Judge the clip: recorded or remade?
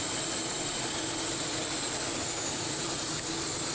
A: remade